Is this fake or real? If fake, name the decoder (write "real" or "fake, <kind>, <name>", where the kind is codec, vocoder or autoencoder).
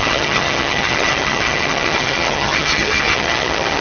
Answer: fake, vocoder, HiFi-GAN